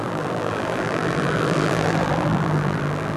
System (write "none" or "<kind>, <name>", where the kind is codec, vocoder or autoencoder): vocoder, BigVGAN v2